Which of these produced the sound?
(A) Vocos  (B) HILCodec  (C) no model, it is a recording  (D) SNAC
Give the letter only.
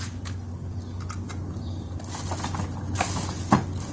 C